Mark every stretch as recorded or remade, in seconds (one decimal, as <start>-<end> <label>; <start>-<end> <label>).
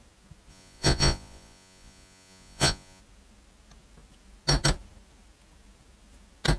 0.0-0.5 recorded; 0.5-3.0 remade; 3.0-6.6 recorded